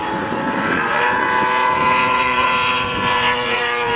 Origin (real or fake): fake